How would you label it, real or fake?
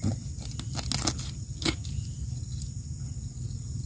real